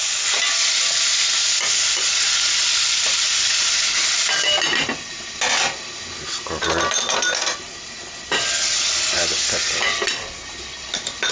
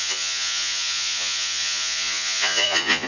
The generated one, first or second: second